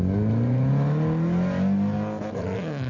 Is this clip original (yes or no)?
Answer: yes